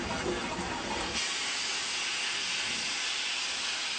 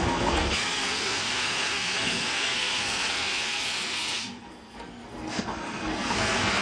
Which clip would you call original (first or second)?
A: first